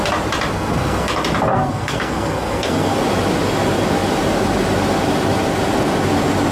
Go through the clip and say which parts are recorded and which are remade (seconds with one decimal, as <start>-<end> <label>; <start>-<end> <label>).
0.0-0.5 recorded; 0.5-1.1 remade; 1.1-1.5 recorded; 1.5-3.0 remade; 3.0-6.5 recorded